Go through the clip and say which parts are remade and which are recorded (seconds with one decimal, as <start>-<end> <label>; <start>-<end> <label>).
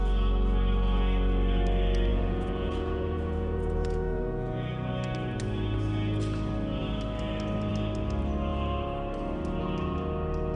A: 0.0-2.1 recorded; 2.1-4.9 remade; 4.9-10.6 recorded